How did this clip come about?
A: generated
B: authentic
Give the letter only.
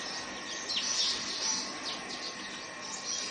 B